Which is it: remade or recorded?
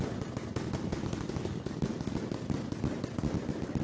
recorded